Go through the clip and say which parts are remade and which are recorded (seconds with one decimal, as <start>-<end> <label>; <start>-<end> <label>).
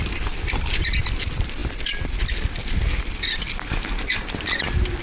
0.0-5.0 recorded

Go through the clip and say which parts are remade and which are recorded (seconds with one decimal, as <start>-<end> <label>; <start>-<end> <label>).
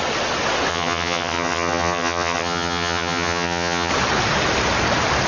0.0-0.7 recorded; 0.7-3.9 remade; 3.9-5.3 recorded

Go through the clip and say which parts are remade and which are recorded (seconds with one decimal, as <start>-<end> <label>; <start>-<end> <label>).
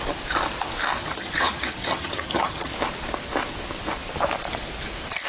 0.0-1.0 recorded; 1.0-2.7 remade; 2.7-5.3 recorded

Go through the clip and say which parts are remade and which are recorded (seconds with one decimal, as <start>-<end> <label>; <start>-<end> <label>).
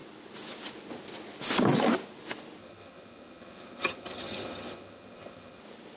0.0-2.6 recorded; 2.6-5.6 remade; 5.6-6.0 recorded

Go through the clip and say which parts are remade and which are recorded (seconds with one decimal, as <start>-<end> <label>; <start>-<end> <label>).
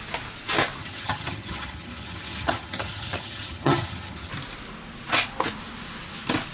0.0-0.8 recorded; 0.8-4.3 remade; 4.3-6.5 recorded